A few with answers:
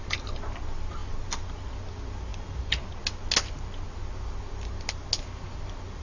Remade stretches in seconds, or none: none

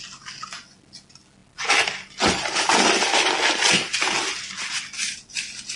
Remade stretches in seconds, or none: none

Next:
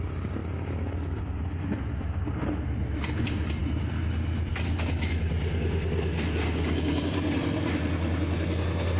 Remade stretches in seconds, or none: none